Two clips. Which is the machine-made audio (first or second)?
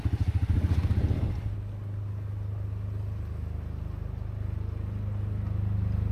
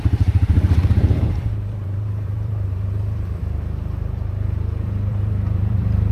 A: second